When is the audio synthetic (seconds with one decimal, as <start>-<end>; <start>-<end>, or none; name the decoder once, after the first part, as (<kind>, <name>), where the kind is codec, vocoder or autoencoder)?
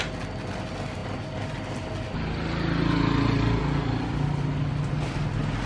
none